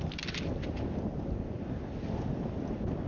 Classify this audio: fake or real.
real